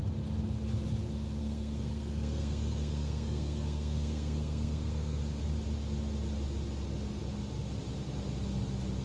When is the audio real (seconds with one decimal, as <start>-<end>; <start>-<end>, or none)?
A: 0.0-1.4; 5.2-9.0